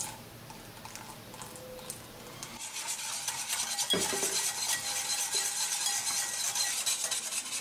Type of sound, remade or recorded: recorded